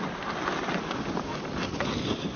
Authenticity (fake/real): real